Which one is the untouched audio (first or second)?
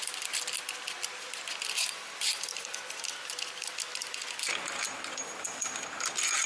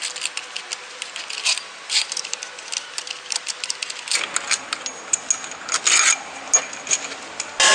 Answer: second